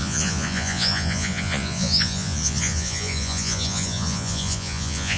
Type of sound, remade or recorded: remade